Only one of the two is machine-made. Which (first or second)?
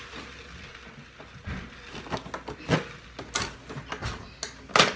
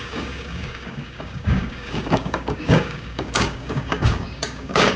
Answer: second